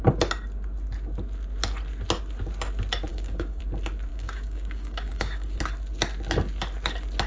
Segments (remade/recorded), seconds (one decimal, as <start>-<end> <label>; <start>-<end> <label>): 0.0-3.1 recorded; 3.1-3.6 remade; 3.6-4.1 recorded; 4.1-5.6 remade; 5.6-7.3 recorded